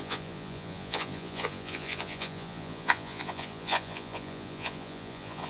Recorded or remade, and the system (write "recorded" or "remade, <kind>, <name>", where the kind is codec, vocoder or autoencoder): remade, vocoder, Vocos